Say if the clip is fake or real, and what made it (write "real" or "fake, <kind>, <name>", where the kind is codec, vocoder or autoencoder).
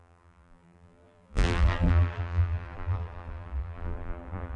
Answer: fake, vocoder, BigVGAN v2